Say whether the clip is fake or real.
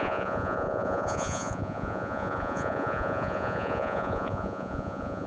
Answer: fake